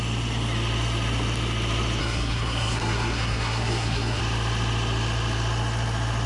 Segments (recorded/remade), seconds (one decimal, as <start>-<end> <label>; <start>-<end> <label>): 0.0-2.0 recorded; 2.0-4.2 remade; 4.2-6.3 recorded